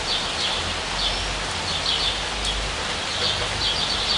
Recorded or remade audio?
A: recorded